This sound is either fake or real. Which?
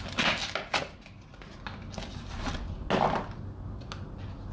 real